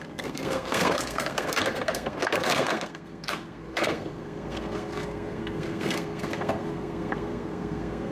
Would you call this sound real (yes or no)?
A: no